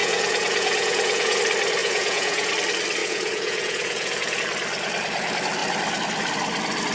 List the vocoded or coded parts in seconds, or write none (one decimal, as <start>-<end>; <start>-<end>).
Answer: 0.0-1.4; 1.8-2.5; 3.0-4.4